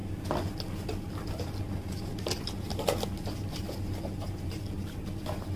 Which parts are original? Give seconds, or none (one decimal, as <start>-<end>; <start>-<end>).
0.0-5.6